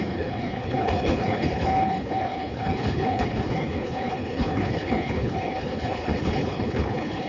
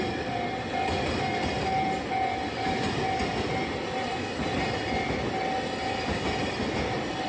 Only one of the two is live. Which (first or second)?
second